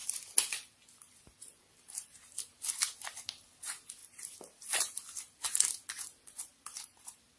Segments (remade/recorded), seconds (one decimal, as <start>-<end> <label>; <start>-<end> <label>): 0.0-2.5 remade; 2.5-4.0 recorded; 4.0-7.4 remade